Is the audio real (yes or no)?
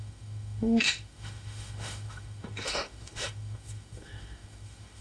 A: no